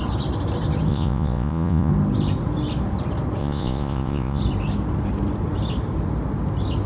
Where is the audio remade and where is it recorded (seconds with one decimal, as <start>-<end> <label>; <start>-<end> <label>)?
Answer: 0.0-0.9 recorded; 0.9-1.9 remade; 1.9-3.4 recorded; 3.4-4.4 remade; 4.4-6.9 recorded